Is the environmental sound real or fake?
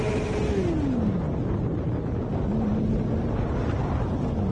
real